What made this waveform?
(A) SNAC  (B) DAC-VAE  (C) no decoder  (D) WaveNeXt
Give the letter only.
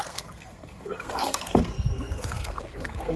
A